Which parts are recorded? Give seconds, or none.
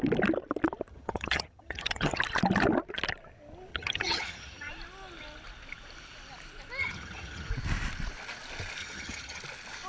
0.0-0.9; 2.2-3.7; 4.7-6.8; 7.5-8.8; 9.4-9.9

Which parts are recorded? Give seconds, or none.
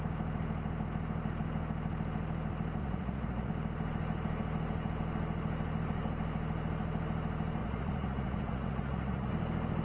0.0-2.8; 3.5-7.6; 9.3-9.8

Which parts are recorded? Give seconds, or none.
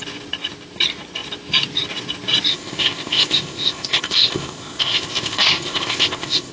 0.0-2.5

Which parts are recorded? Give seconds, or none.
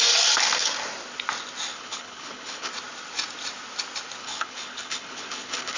0.0-1.7; 2.7-4.2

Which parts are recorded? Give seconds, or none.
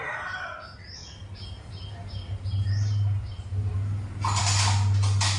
0.0-5.4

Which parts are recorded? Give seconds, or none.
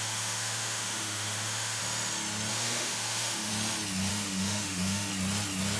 1.8-2.5; 3.5-4.1; 5.1-5.8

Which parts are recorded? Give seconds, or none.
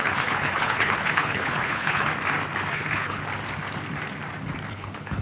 2.1-2.7; 3.2-4.7